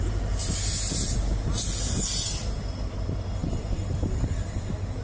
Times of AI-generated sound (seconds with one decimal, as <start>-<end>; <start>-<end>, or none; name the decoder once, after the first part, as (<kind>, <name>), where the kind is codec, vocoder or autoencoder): none